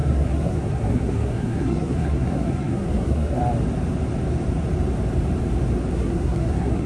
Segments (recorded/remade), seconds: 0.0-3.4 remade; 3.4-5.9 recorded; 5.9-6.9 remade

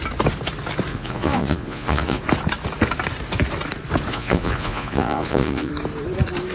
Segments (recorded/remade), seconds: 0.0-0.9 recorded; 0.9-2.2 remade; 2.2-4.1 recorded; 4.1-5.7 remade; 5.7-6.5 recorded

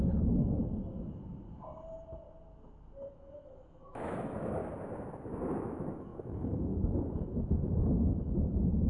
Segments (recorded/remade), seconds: 0.0-0.6 remade; 0.6-3.1 recorded; 3.1-4.6 remade; 4.6-5.4 recorded; 5.4-8.9 remade